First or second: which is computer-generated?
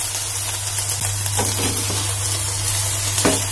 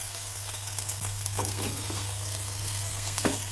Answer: second